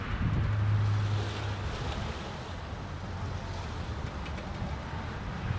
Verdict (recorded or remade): recorded